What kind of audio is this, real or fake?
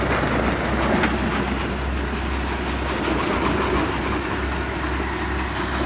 real